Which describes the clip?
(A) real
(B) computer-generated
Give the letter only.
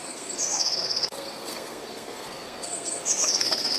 B